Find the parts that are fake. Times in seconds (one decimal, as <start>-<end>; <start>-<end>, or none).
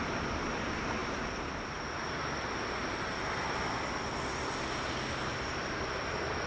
none